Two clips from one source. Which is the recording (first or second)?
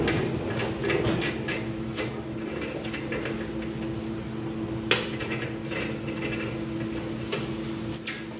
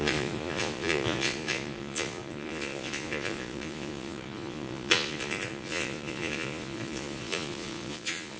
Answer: first